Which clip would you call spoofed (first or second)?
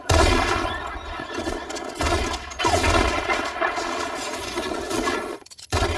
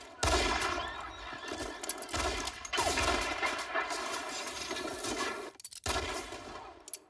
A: first